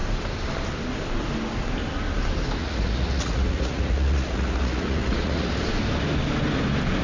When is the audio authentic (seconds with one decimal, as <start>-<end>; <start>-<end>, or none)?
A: 0.0-2.6; 5.5-7.0